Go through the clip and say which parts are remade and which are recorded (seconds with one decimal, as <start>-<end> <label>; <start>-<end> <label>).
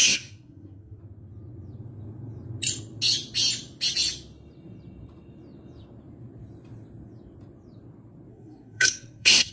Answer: 0.0-1.0 remade; 1.0-8.3 recorded; 8.3-9.5 remade